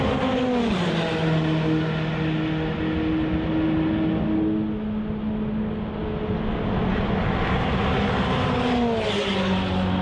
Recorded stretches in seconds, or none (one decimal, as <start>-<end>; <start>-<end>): 0.0-10.0